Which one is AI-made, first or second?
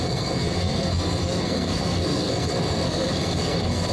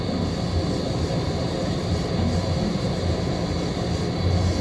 first